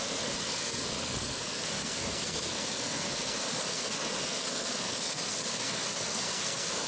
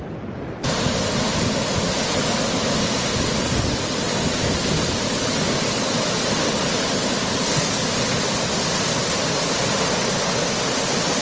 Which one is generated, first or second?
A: first